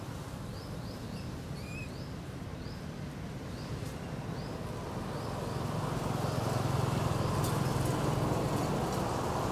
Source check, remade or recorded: recorded